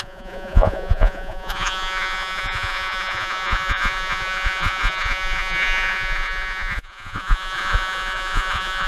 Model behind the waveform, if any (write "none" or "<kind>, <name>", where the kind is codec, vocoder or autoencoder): vocoder, Vocos